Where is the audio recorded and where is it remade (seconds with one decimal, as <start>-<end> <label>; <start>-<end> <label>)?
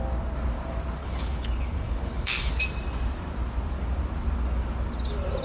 0.0-1.0 recorded; 1.0-2.5 remade; 2.5-5.4 recorded